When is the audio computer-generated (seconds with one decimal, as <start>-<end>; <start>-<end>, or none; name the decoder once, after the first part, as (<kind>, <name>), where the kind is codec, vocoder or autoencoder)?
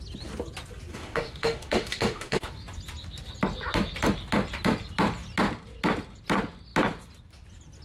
0.9-2.5 (autoencoder, DAC-VAE)